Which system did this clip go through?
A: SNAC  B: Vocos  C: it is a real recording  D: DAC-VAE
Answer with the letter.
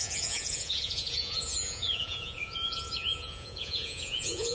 B